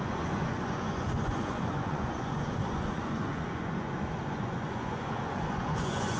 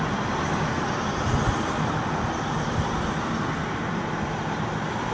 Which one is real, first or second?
second